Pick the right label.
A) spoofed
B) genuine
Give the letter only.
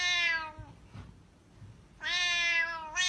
B